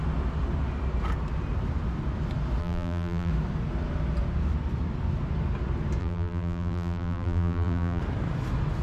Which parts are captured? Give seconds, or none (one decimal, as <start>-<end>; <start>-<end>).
0.0-2.6; 3.3-6.0; 8.0-8.8